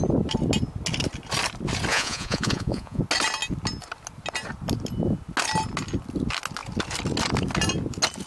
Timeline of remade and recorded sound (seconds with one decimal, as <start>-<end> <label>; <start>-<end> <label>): 0.0-1.9 recorded; 1.9-3.0 remade; 3.0-8.3 recorded